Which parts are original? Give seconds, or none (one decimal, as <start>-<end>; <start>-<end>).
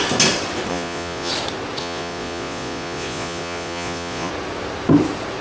0.0-0.7; 1.3-1.8; 4.3-5.4